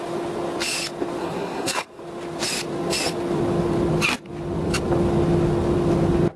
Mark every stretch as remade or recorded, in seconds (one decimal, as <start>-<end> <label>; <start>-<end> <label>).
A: 0.0-1.2 recorded; 1.2-2.0 remade; 2.0-6.4 recorded